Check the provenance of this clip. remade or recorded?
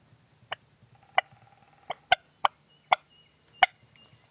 recorded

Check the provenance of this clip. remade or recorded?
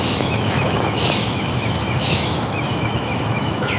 remade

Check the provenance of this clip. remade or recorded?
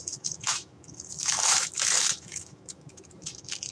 remade